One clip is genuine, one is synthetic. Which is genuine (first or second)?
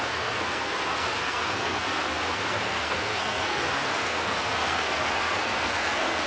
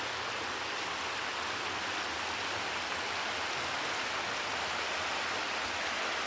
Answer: second